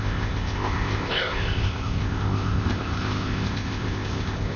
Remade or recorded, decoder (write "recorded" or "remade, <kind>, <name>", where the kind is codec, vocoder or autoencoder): remade, codec, ZipCodec